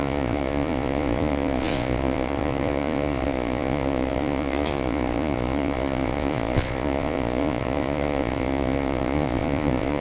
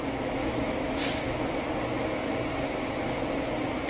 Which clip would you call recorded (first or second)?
second